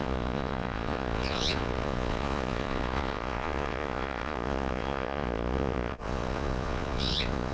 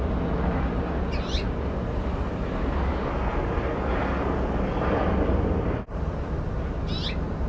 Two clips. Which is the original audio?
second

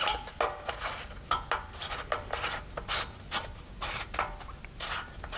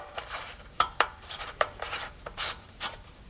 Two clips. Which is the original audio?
first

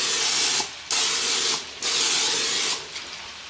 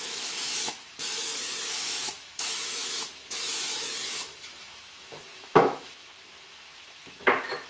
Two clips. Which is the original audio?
first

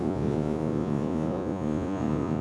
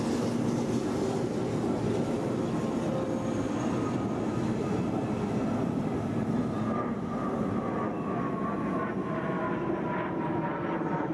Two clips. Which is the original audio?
second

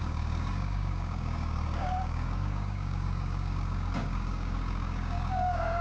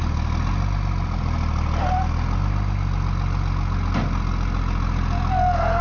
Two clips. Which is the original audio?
second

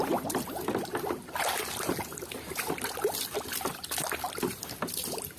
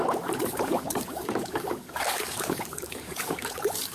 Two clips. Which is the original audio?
first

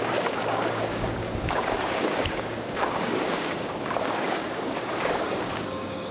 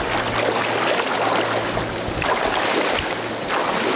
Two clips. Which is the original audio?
second